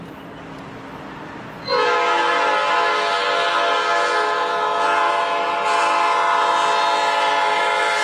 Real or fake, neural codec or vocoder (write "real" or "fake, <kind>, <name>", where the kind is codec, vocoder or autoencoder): real